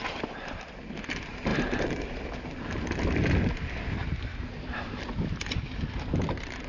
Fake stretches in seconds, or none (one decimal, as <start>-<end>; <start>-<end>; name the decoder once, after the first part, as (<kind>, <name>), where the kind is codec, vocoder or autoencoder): 1.5-2.2 (vocoder, BigVGAN v2)